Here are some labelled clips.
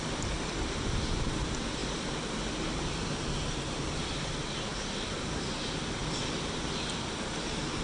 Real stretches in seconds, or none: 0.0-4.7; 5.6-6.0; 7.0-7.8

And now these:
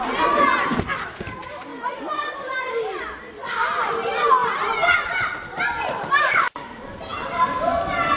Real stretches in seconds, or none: 0.0-8.2

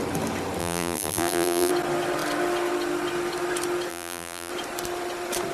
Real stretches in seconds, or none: 0.0-0.6; 1.7-3.9; 4.5-5.5

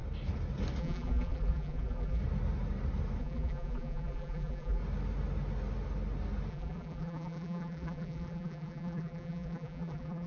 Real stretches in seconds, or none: 0.0-0.8; 2.2-3.2; 4.8-6.5

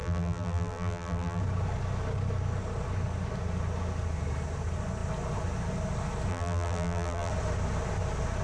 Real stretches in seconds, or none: 1.4-6.3; 7.3-8.4